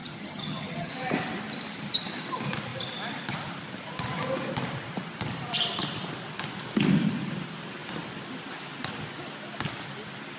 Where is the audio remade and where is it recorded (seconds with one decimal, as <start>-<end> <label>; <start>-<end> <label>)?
0.0-0.9 remade; 0.9-10.4 recorded